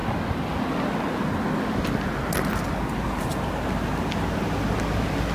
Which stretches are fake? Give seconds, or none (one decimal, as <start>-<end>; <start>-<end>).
none